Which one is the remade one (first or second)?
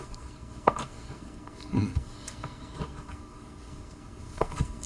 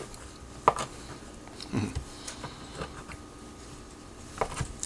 first